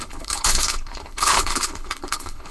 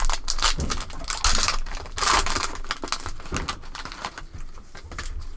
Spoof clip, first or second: first